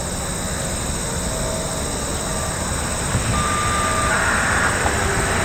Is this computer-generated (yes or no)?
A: no